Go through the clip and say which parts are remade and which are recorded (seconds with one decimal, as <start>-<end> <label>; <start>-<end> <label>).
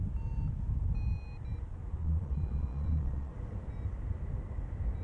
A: 0.0-2.0 recorded; 2.0-3.3 remade; 3.3-5.0 recorded